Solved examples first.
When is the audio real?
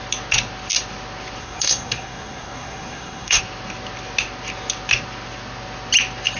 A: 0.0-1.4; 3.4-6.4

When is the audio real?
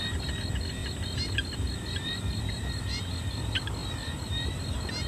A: 0.0-5.1